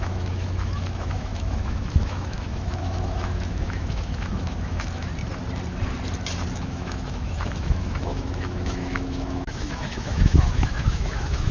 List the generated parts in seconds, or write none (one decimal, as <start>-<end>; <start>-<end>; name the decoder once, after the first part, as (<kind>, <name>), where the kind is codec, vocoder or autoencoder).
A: 0.0-5.1 (autoencoder, DAC-VAE); 6.5-11.5